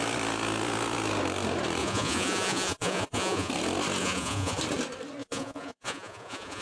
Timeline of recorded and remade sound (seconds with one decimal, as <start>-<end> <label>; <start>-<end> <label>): 0.0-1.8 recorded; 1.8-3.5 remade; 3.5-4.0 recorded; 4.0-4.6 remade; 4.6-5.2 recorded; 5.2-6.6 remade